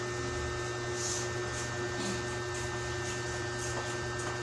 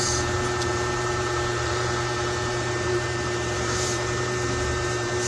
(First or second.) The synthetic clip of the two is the second